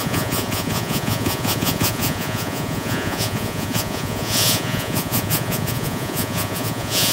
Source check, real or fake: fake